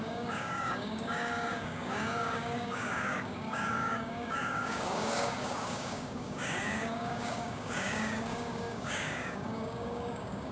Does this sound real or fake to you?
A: fake